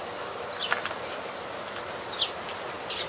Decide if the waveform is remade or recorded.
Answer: recorded